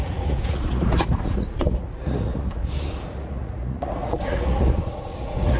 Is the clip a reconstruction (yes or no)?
yes